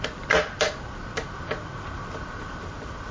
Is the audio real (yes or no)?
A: yes